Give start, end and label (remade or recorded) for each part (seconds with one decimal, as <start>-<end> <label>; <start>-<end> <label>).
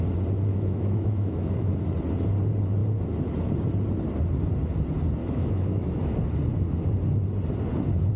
0.0-0.5 recorded; 0.5-1.7 remade; 1.7-5.2 recorded; 5.2-6.1 remade; 6.1-8.2 recorded